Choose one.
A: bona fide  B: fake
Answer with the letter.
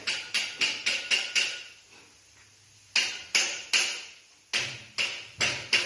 A